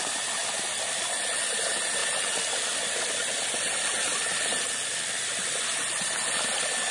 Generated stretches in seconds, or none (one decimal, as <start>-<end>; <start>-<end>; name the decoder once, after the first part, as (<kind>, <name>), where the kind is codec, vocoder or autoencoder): none